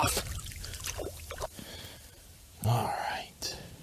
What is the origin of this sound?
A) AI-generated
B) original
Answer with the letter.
A